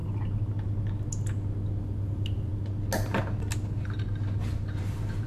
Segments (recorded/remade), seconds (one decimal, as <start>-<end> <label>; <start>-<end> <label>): 0.0-1.8 recorded; 1.8-2.5 remade; 2.5-4.8 recorded; 4.8-5.3 remade